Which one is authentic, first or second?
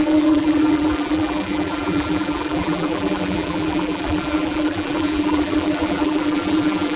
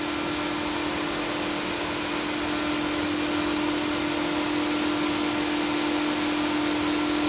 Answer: second